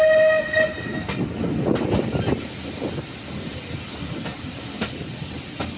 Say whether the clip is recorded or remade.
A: recorded